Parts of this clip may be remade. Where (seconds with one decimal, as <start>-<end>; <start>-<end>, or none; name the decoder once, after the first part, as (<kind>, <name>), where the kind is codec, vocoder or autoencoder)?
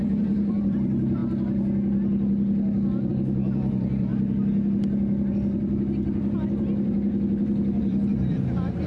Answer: 0.0-1.2 (vocoder, BigVGAN v2); 3.1-4.1; 5.3-8.9